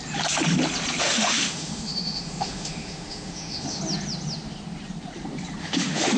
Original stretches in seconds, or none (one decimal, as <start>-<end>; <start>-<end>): 0.0-1.0; 3.8-5.6

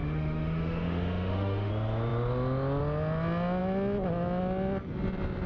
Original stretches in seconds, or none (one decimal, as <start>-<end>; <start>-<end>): 1.7-5.5

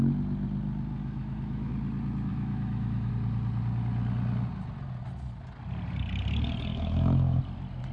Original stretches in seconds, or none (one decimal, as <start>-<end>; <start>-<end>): 0.0-1.0; 1.7-2.3; 3.1-6.7; 7.4-7.9

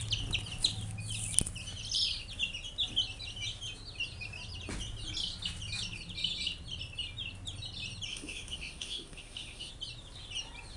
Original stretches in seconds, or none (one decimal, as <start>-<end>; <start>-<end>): 0.0-8.1; 9.7-10.8

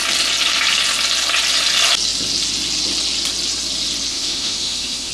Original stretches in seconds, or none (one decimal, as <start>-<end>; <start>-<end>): 0.0-4.1

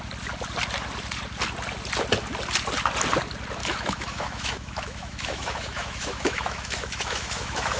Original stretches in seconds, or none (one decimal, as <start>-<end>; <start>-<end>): 0.0-3.6